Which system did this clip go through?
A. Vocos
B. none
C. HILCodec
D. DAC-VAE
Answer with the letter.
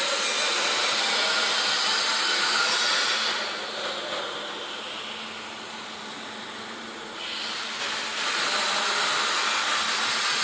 B